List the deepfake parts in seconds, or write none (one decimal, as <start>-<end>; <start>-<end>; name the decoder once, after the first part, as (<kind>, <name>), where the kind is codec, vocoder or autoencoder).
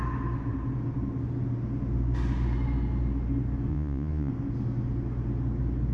3.7-4.3 (vocoder, Vocos)